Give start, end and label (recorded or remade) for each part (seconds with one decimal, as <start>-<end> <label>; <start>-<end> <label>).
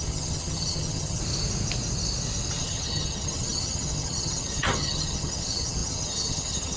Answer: 0.0-1.2 remade; 1.2-2.6 recorded; 2.6-6.8 remade